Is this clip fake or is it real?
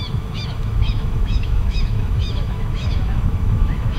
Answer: fake